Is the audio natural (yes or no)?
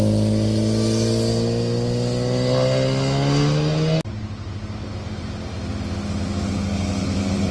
yes